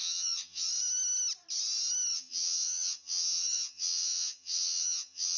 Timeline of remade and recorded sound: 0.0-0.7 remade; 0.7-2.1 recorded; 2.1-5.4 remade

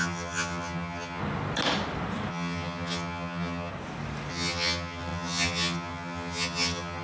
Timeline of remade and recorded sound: 0.0-1.2 remade; 1.2-2.3 recorded; 2.3-3.7 remade; 3.7-4.3 recorded; 4.3-7.0 remade

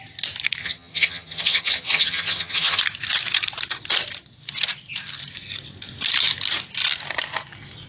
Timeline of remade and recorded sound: 0.0-0.6 recorded; 0.6-2.8 remade; 2.8-7.9 recorded

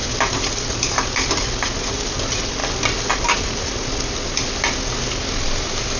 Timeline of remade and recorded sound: 0.0-6.0 recorded

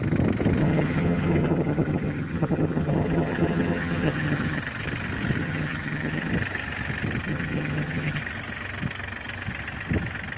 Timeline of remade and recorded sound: 0.0-0.6 recorded; 0.6-4.6 remade; 4.6-5.4 recorded; 5.4-6.3 remade; 6.3-7.3 recorded; 7.3-8.2 remade; 8.2-10.4 recorded

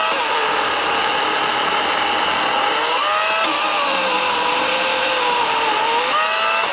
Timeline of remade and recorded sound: 0.0-6.7 recorded